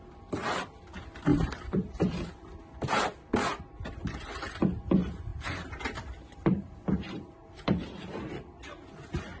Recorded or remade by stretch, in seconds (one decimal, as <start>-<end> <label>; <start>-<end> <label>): 0.0-1.3 recorded; 1.3-2.0 remade; 2.0-5.3 recorded; 5.3-8.1 remade; 8.1-9.4 recorded